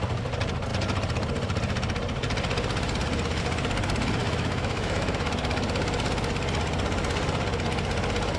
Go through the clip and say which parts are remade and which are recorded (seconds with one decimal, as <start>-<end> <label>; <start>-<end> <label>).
0.0-4.2 recorded; 4.2-5.3 remade; 5.3-8.4 recorded